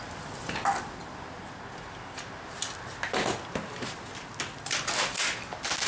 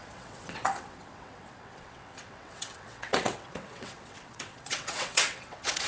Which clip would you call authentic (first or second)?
first